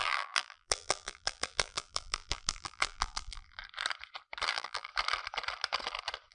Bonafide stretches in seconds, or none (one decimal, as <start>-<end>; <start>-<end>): 3.6-4.5; 4.9-6.3